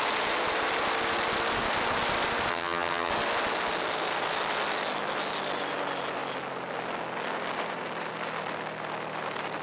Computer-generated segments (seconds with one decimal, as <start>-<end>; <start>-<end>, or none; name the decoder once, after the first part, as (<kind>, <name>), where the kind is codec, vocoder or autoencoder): 2.5-3.1 (vocoder, HiFi-GAN)